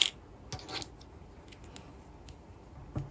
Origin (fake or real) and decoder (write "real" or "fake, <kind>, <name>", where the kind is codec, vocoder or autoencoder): real